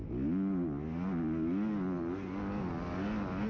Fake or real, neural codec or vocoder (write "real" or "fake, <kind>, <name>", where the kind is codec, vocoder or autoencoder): real